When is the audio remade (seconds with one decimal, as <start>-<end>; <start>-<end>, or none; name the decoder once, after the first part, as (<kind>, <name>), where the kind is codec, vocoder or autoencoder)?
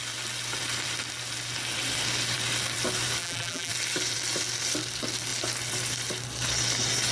3.2-3.7 (vocoder, BigVGAN v2)